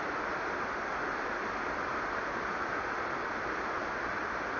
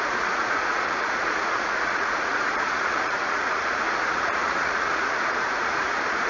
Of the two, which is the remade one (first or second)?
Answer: second